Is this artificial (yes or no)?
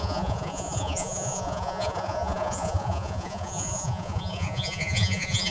yes